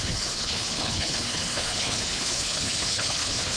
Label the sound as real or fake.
fake